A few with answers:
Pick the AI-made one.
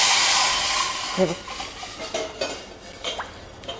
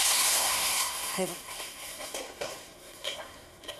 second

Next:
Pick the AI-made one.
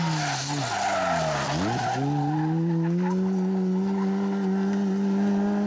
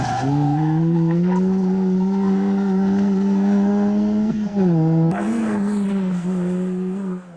second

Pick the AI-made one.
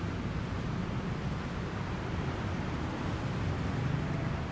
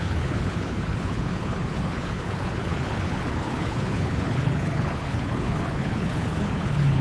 second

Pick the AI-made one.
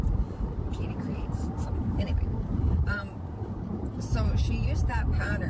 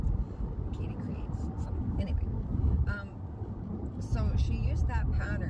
first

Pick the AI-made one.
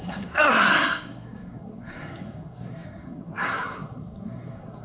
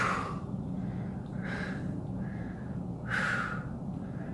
first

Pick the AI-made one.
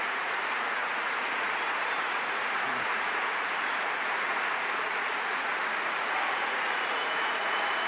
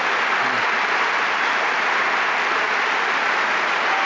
first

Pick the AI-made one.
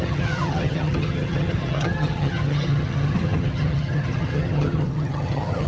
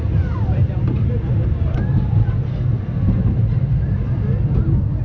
first